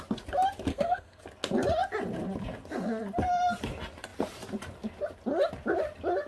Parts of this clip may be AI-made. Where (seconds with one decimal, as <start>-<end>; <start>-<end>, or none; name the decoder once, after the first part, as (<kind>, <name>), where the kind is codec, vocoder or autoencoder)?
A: 0.7-1.2 (codec, SNAC)